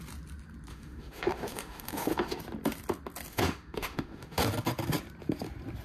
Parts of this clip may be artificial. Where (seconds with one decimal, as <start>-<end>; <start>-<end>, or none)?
0.7-2.4; 3.3-4.4